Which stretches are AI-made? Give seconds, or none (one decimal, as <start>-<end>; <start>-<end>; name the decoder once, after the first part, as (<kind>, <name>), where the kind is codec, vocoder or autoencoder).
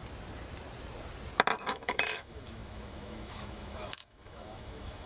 1.7-5.1 (autoencoder, DAC-VAE)